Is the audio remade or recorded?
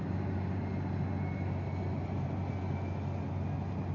recorded